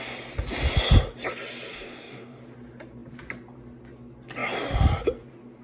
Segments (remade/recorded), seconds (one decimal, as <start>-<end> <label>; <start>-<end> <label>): 0.0-1.7 recorded; 1.7-2.4 remade; 2.4-5.6 recorded